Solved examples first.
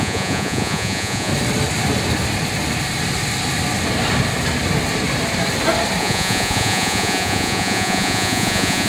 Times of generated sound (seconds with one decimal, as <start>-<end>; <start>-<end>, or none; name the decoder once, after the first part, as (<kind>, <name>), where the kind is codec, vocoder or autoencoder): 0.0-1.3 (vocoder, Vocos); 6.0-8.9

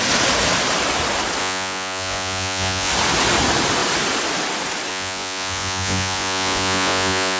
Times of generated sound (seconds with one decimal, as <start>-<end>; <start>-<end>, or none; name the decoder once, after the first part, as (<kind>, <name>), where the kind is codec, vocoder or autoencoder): 1.4-2.9 (vocoder, Vocos); 4.9-7.4

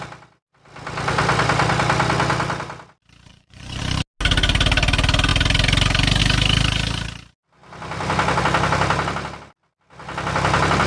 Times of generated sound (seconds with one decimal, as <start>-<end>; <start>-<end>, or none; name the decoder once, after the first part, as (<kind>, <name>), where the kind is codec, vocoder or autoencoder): 3.3-3.8 (vocoder, Vocos)

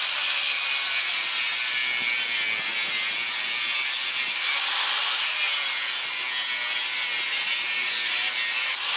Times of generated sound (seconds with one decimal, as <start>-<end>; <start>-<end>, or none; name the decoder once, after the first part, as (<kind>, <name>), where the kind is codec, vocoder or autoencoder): none

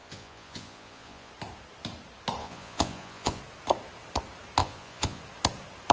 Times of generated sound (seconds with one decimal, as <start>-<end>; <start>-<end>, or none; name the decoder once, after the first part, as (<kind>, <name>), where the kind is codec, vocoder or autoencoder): 0.0-1.3 (vocoder, Vocos); 2.4-3.4; 4.6-5.2

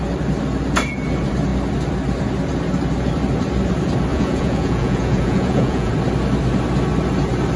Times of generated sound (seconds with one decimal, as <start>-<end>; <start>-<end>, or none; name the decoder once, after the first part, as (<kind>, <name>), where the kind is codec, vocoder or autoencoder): 4.1-5.9 (vocoder, Vocos)

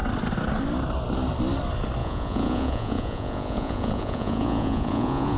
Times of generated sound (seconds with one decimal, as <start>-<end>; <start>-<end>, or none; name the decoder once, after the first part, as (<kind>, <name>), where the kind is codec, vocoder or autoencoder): 2.0-5.4 (vocoder, Vocos)